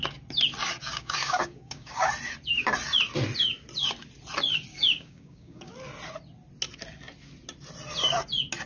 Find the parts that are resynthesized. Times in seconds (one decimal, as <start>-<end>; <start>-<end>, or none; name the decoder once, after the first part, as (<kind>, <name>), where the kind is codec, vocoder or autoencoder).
0.8-2.1 (codec, DAC); 4.7-5.7